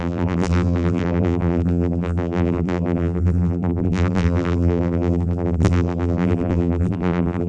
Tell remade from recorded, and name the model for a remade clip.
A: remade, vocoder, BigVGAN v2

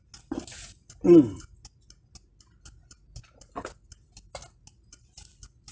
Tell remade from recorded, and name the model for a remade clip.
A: recorded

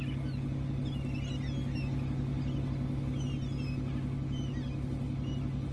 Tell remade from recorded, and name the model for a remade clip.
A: recorded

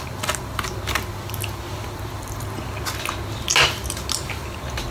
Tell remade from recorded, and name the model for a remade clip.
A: recorded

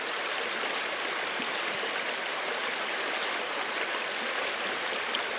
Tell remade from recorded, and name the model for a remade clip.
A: recorded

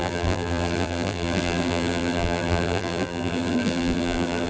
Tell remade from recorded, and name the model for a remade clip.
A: remade, vocoder, BigVGAN v2